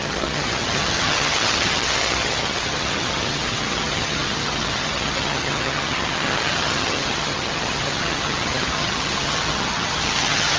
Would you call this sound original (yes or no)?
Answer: no